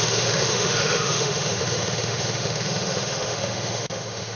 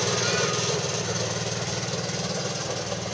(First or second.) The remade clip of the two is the first